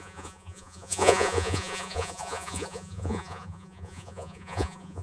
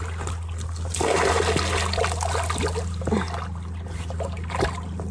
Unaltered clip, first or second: second